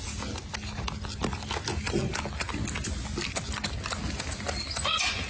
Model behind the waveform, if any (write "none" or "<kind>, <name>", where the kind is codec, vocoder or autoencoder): none